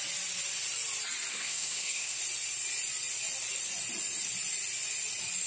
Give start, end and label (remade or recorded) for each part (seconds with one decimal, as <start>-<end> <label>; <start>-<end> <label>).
0.0-1.3 recorded; 1.3-2.2 remade; 2.2-5.5 recorded